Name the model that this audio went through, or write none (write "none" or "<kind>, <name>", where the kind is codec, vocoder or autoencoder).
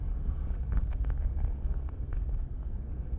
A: codec, SNAC